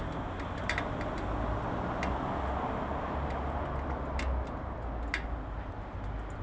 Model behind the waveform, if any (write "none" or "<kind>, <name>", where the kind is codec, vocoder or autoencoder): none